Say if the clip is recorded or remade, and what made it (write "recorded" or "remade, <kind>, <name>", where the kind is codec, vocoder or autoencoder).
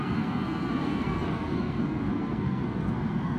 remade, codec, SNAC